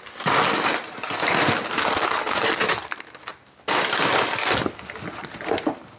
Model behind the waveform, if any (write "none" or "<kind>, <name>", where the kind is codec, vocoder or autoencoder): none